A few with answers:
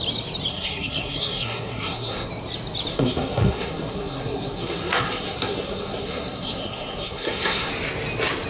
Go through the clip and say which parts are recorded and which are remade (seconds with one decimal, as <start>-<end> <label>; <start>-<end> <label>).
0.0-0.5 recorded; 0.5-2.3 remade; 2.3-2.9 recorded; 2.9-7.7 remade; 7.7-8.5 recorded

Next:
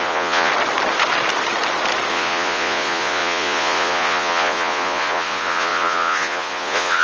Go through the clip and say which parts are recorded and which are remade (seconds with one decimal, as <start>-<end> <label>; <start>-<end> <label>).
0.0-0.5 remade; 0.5-2.1 recorded; 2.1-7.0 remade

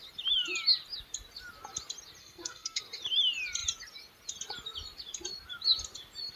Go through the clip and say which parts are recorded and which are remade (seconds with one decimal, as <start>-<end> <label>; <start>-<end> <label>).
0.0-2.2 recorded; 2.2-2.8 remade; 2.8-6.4 recorded

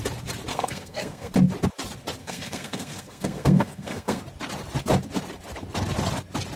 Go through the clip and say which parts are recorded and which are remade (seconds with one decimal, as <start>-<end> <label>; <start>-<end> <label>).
0.0-0.5 recorded; 0.5-1.3 remade; 1.3-2.2 recorded; 2.2-4.2 remade; 4.2-6.6 recorded

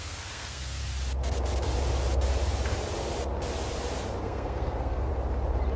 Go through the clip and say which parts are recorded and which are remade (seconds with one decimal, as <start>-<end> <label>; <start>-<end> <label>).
0.0-0.8 remade; 0.8-4.2 recorded; 4.2-5.1 remade; 5.1-5.8 recorded

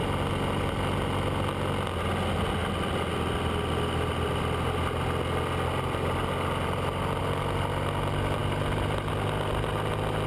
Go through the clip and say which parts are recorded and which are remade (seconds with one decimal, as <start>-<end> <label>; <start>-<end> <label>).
0.0-10.3 recorded

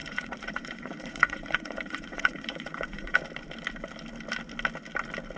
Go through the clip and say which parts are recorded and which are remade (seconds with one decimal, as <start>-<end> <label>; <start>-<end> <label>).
0.0-3.2 remade; 3.2-5.4 recorded